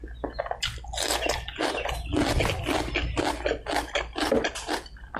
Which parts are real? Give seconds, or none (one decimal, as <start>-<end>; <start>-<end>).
0.0-5.2